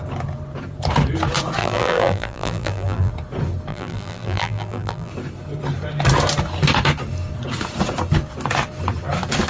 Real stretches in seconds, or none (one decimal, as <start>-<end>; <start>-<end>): 0.0-1.6; 3.1-3.7; 5.1-9.5